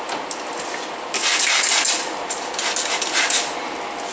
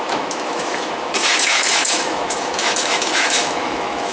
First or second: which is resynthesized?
second